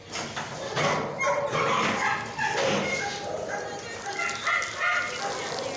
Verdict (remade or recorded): recorded